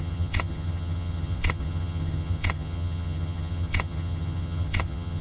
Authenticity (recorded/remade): remade